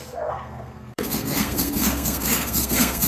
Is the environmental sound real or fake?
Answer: fake